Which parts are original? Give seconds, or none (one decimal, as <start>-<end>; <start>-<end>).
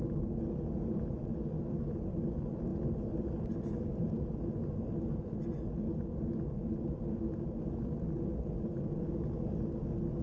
0.0-10.2